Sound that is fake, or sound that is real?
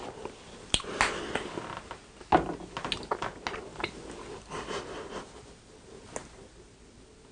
real